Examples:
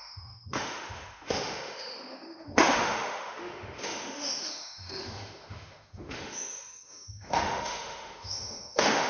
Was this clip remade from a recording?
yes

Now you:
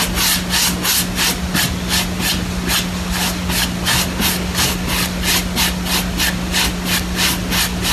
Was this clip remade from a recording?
no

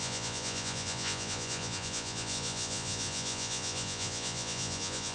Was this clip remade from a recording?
yes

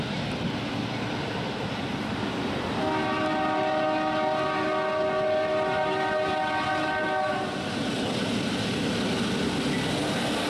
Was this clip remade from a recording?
no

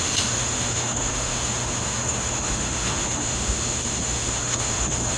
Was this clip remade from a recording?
yes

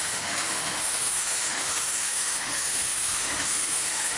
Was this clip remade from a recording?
yes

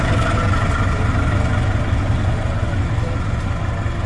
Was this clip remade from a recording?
no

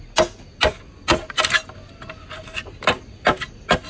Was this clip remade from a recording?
no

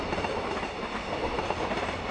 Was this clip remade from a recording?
no